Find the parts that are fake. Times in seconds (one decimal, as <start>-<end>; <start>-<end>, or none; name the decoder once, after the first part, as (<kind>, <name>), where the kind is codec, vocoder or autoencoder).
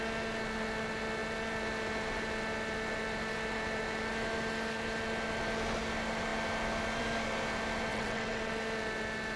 7.9-8.5 (vocoder, WaveNeXt)